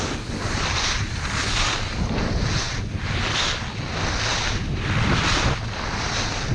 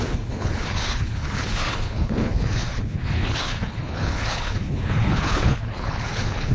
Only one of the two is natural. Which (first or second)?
first